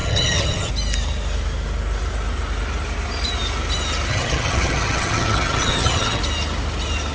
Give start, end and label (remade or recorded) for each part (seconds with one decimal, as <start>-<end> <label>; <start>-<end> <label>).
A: 0.0-0.7 remade; 0.7-4.1 recorded; 4.1-6.2 remade; 6.2-7.1 recorded